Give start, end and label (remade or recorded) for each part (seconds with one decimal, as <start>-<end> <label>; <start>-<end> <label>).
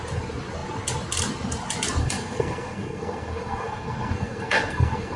0.0-2.0 recorded; 2.0-5.2 remade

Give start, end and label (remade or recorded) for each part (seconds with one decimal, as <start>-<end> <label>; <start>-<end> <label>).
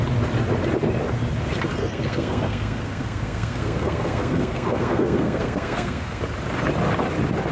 0.0-1.8 recorded; 1.8-6.2 remade; 6.2-7.5 recorded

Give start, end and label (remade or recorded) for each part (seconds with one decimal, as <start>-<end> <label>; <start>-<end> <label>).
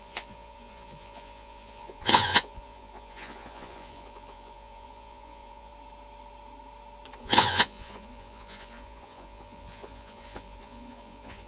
0.0-5.7 remade; 5.7-7.2 recorded; 7.2-11.5 remade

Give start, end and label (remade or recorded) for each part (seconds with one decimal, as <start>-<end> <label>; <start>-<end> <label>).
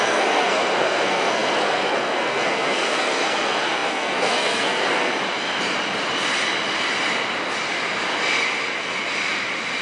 0.0-5.1 remade; 5.1-9.8 recorded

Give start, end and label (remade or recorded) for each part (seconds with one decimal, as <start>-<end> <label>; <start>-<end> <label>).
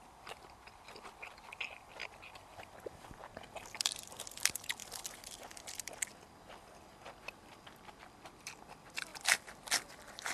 0.0-10.3 recorded